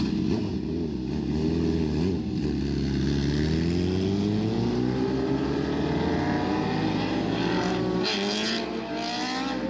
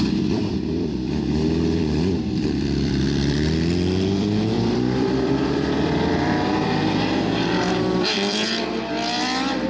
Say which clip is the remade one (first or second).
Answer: second